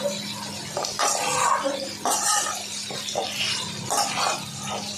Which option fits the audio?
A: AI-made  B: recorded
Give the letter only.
B